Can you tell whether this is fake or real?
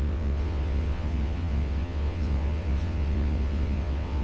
fake